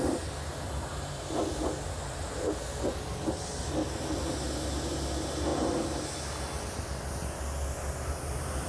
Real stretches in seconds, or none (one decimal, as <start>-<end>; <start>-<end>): 0.0-8.7